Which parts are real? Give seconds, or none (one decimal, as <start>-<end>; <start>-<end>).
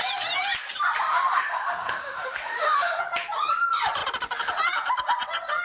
0.0-1.1; 3.0-5.6